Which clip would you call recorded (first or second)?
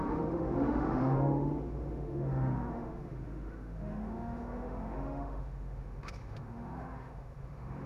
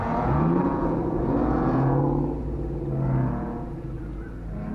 second